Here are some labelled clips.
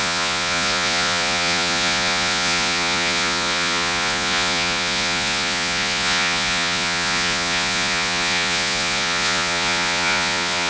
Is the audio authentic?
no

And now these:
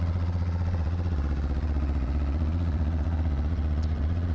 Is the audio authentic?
no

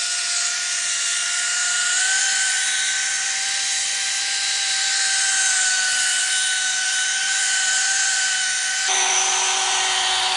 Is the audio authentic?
no